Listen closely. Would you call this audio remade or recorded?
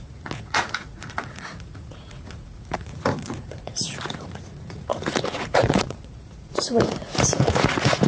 remade